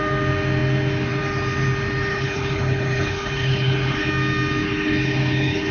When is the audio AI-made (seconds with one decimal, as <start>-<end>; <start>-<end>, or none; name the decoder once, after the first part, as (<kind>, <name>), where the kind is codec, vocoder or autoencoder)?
2.1-4.1 (codec, HILCodec); 4.6-5.7